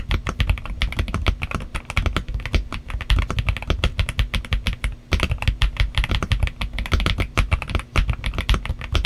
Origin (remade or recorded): recorded